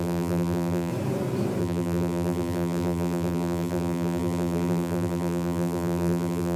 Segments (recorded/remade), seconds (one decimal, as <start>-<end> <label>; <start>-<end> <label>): 0.0-0.9 remade; 0.9-1.6 recorded; 1.6-6.6 remade